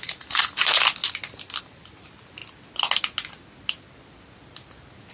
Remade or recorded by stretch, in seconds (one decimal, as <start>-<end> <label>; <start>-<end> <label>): 0.0-1.0 remade; 1.0-1.6 recorded; 1.6-2.4 remade; 2.4-5.1 recorded